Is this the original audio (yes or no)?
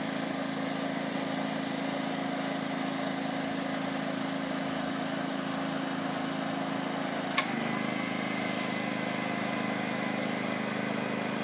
yes